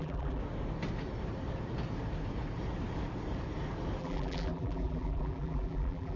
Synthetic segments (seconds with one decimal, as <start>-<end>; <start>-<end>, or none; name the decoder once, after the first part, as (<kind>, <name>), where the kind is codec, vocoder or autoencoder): 0.0-0.4 (vocoder, BigVGAN v2); 4.0-6.2